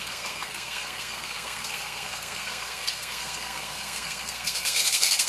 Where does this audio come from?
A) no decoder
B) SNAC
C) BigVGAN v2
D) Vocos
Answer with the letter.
B